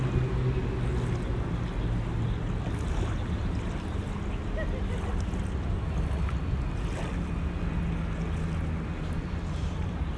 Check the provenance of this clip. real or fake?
real